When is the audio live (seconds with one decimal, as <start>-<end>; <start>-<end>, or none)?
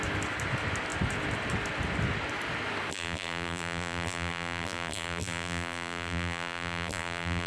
0.0-2.9